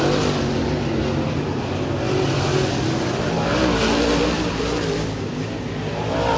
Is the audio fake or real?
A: real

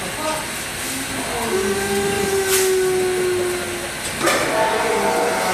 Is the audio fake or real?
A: real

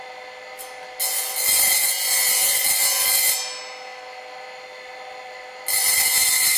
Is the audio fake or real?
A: real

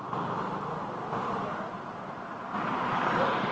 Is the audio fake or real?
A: fake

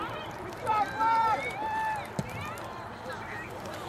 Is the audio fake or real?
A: fake